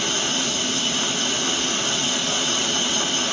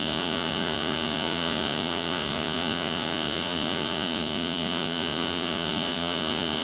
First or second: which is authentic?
first